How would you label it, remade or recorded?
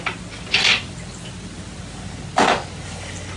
recorded